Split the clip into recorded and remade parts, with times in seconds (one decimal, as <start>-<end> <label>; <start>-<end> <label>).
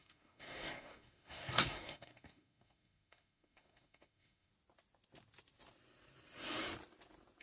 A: 0.0-4.5 remade; 4.5-7.4 recorded